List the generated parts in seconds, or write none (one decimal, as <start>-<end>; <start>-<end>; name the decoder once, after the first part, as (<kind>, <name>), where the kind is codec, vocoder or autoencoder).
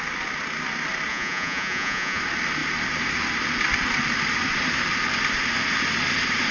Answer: 1.1-2.2 (vocoder, Vocos)